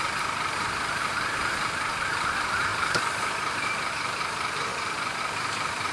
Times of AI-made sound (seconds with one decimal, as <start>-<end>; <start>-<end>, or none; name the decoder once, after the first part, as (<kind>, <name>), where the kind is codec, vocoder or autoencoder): 0.0-1.1 (vocoder, BigVGAN v2); 2.2-5.9